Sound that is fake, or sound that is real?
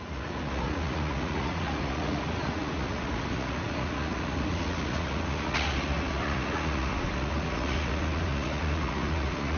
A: fake